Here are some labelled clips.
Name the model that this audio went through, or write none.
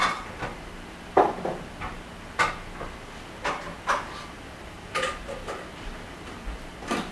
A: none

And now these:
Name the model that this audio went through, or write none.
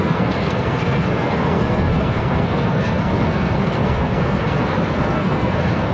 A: codec, SNAC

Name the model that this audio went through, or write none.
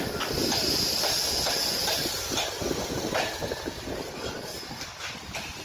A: none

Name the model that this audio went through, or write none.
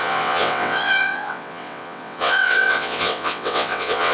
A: vocoder, WaveNeXt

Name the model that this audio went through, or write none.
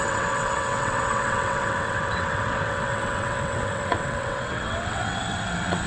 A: vocoder, WaveNeXt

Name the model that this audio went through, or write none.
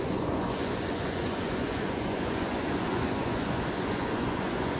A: vocoder, Vocos